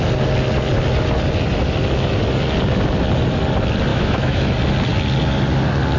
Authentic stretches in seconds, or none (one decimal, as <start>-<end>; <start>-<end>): 0.0-3.9; 4.5-6.0